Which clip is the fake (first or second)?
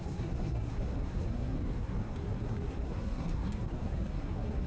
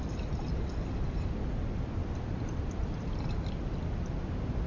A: first